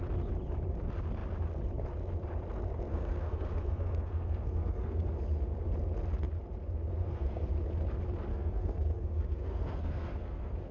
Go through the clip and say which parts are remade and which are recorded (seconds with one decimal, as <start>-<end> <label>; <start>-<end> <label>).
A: 0.0-2.9 recorded; 2.9-5.1 remade; 5.1-6.9 recorded; 6.9-7.5 remade; 7.5-8.3 recorded; 8.3-10.7 remade